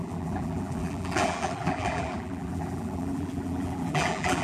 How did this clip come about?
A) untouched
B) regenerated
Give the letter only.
B